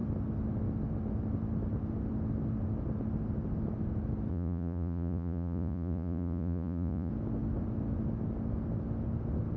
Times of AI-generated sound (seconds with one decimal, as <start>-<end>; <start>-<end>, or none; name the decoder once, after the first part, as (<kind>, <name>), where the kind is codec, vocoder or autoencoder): 4.3-7.1 (vocoder, Vocos)